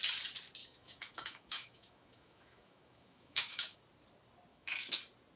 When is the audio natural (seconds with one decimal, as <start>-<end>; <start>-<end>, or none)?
0.0-0.6; 3.8-4.5; 5.0-5.4